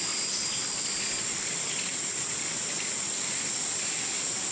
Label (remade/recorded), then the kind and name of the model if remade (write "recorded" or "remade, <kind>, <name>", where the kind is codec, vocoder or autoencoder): recorded